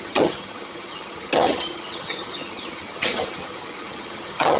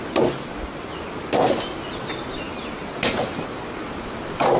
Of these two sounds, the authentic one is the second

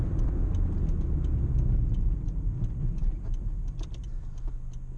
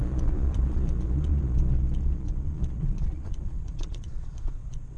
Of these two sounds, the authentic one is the first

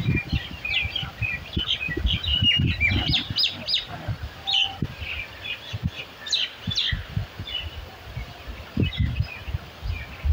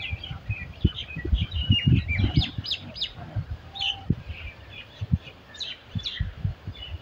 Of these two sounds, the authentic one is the first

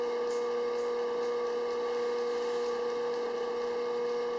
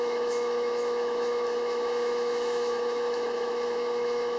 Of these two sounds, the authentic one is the first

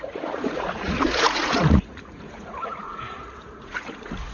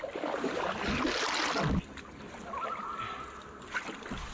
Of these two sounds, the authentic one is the second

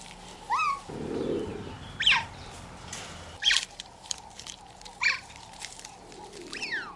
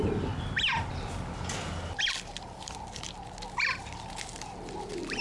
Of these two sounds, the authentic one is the second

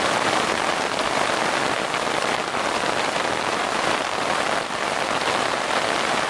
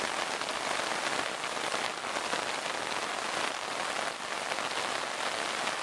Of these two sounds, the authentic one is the second